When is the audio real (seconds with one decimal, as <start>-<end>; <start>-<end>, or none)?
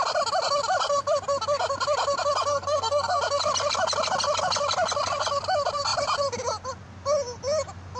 0.0-2.5; 3.2-8.0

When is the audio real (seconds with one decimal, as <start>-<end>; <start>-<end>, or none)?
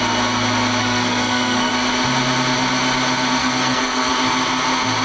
0.0-0.8; 1.7-3.4; 4.1-5.0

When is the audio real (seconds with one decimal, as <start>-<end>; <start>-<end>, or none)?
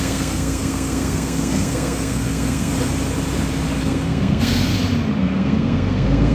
2.7-3.8; 4.7-5.2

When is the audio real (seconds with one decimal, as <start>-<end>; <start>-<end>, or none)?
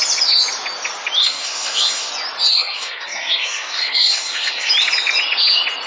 0.0-1.2; 2.1-2.5; 4.7-5.9